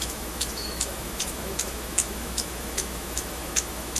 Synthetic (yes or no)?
yes